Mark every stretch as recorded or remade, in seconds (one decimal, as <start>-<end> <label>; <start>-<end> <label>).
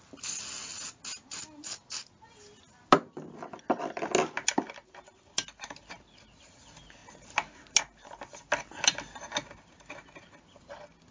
0.0-11.1 recorded